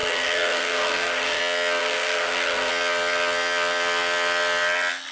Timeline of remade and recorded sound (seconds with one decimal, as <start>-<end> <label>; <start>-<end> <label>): 0.0-1.4 remade; 1.4-1.8 recorded; 1.8-2.7 remade; 2.7-5.1 recorded